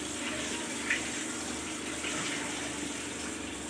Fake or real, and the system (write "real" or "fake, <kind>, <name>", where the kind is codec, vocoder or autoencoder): fake, vocoder, BigVGAN v2